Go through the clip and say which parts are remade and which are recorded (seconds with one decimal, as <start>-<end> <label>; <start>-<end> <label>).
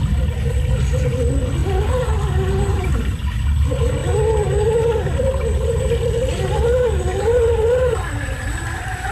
0.0-1.6 recorded; 1.6-2.6 remade; 2.6-9.1 recorded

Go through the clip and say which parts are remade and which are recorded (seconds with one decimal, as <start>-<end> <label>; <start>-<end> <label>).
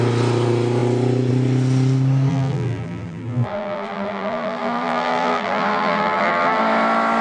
0.0-2.3 recorded; 2.3-6.6 remade; 6.6-7.2 recorded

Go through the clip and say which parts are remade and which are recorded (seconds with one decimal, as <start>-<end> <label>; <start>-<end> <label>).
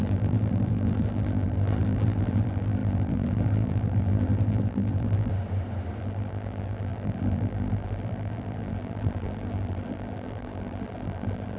0.0-5.3 remade; 5.3-6.0 recorded; 6.0-11.6 remade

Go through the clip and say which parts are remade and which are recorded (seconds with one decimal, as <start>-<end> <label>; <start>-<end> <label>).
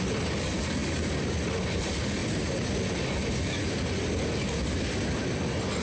0.0-5.8 recorded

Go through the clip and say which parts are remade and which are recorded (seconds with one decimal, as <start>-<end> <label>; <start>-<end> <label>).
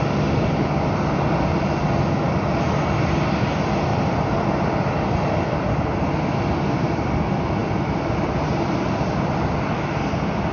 0.0-3.9 recorded; 3.9-4.7 remade; 4.7-7.6 recorded; 7.6-8.4 remade; 8.4-10.5 recorded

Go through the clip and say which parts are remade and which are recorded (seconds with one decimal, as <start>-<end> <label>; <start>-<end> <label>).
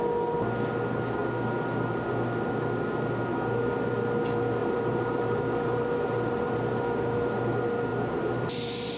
0.0-4.6 recorded; 4.6-7.3 remade; 7.3-7.9 recorded; 7.9-9.0 remade